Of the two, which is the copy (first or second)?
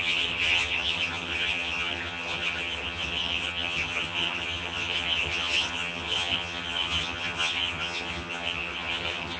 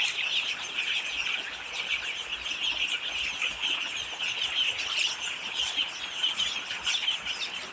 first